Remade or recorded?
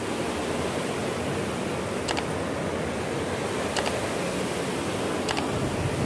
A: recorded